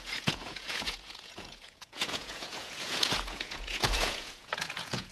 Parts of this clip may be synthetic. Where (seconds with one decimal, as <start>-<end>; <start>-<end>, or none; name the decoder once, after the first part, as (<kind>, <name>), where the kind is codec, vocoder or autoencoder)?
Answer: 0.0-5.1 (vocoder, Vocos)